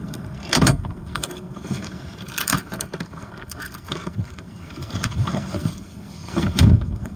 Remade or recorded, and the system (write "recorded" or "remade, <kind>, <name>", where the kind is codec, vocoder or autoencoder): remade, codec, SNAC